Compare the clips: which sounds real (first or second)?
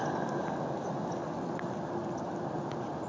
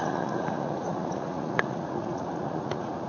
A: first